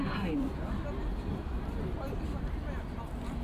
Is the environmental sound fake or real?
real